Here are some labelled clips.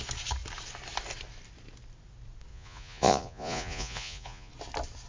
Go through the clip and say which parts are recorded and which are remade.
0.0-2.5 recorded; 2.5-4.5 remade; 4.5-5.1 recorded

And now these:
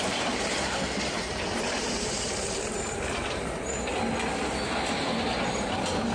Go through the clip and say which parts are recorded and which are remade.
0.0-3.9 remade; 3.9-5.5 recorded; 5.5-6.1 remade

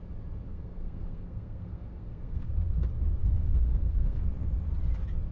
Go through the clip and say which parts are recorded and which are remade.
0.0-0.5 recorded; 0.5-2.5 remade; 2.5-3.2 recorded; 3.2-4.2 remade; 4.2-5.3 recorded

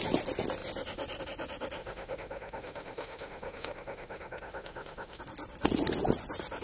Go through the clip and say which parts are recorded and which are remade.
0.0-1.8 recorded; 1.8-5.2 remade; 5.2-6.6 recorded

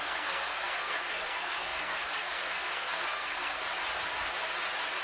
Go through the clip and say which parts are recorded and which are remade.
0.0-3.6 remade; 3.6-5.0 recorded

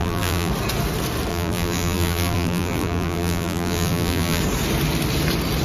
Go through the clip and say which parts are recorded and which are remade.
0.0-0.5 remade; 0.5-1.3 recorded; 1.3-4.4 remade; 4.4-5.6 recorded

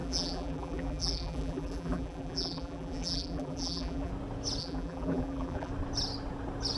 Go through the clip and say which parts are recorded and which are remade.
0.0-4.1 remade; 4.1-4.6 recorded; 4.6-5.7 remade; 5.7-6.8 recorded

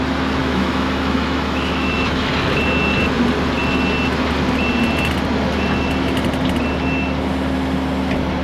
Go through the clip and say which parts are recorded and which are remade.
0.0-0.4 recorded; 0.4-2.3 remade; 2.3-8.4 recorded